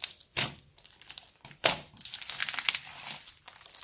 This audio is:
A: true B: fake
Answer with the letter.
B